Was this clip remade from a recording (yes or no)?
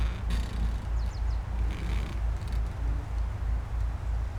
no